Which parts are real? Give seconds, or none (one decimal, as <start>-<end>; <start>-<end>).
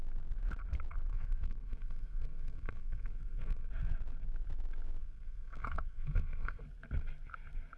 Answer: 0.0-1.1; 3.7-5.0; 6.6-7.8